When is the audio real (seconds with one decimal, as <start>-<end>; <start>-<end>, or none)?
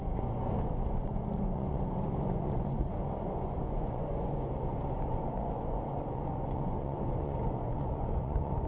none